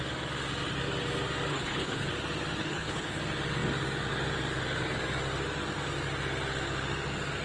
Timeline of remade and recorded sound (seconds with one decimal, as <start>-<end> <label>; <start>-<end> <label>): 0.0-1.5 recorded; 1.5-2.1 remade; 2.1-2.6 recorded; 2.6-3.2 remade; 3.2-7.4 recorded